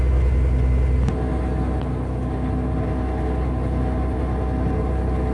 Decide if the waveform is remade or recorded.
recorded